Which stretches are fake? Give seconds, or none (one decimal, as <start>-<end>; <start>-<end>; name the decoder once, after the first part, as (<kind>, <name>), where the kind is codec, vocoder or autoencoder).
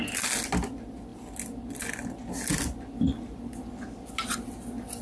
none